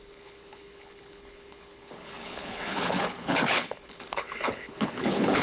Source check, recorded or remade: remade